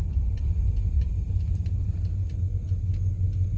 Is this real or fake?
real